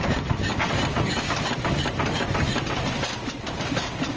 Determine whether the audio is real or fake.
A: real